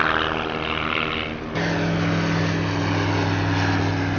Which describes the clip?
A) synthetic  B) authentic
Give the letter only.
B